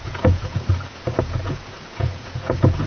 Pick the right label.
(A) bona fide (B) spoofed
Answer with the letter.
B